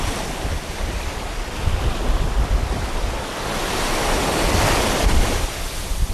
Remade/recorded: recorded